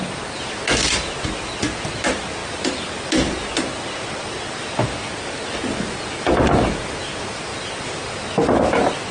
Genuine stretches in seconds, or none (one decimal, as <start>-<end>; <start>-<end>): 0.0-9.1